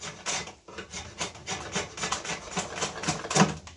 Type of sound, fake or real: real